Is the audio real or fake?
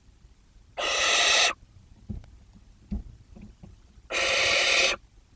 fake